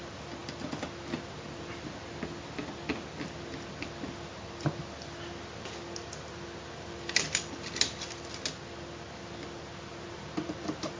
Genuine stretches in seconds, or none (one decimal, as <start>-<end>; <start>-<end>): 0.0-11.0